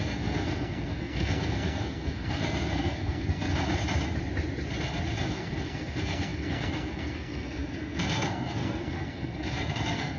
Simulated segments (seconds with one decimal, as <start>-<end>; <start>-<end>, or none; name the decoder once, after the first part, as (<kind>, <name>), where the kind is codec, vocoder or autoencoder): 0.0-3.5 (codec, SNAC); 5.3-10.2